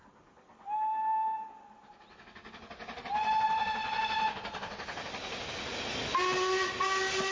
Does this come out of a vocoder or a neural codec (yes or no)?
no